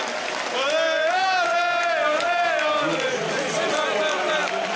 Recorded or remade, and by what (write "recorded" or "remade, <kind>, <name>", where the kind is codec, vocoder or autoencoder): recorded